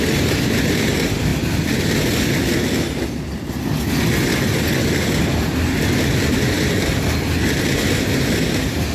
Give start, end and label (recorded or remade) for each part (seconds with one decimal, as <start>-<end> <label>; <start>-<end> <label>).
0.0-8.9 recorded